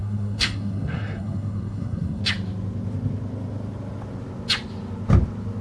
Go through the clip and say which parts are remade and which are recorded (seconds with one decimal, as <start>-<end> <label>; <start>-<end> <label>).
0.0-2.2 remade; 2.2-5.6 recorded